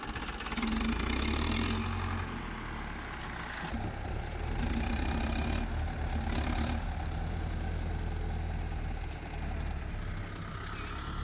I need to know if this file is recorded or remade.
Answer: recorded